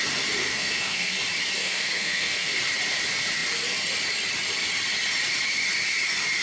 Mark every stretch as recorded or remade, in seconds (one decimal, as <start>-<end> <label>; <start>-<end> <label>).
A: 0.0-0.4 recorded; 0.4-1.1 remade; 1.1-1.6 recorded; 1.6-2.6 remade; 2.6-6.4 recorded